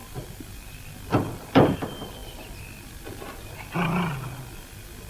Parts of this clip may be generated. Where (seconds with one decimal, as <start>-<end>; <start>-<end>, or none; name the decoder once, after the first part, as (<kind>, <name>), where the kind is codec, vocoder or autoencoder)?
none

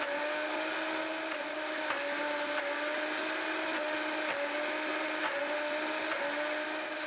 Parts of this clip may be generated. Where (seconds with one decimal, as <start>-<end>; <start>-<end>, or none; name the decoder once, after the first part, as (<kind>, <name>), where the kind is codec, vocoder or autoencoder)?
none